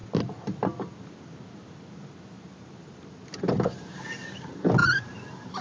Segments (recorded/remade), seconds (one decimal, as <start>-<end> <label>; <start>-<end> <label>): 0.0-5.6 recorded